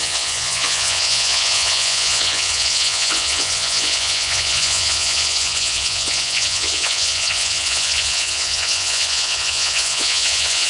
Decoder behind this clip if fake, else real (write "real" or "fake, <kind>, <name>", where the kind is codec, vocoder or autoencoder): fake, vocoder, Vocos